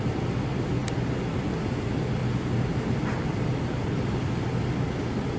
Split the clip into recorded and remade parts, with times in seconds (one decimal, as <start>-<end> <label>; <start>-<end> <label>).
0.0-2.2 recorded; 2.2-3.3 remade; 3.3-5.4 recorded